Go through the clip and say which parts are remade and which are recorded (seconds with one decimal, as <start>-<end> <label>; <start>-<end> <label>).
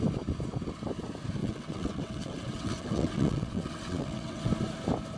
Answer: 0.0-1.4 recorded; 1.4-4.5 remade; 4.5-5.2 recorded